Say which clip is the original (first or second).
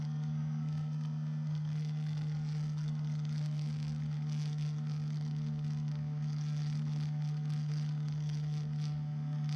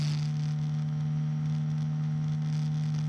second